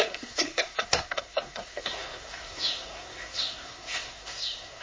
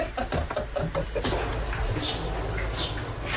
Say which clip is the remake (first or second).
first